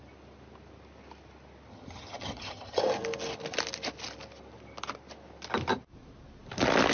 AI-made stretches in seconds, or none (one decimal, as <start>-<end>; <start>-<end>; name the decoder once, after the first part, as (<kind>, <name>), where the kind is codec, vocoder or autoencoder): 1.7-2.8 (vocoder, HiFi-GAN)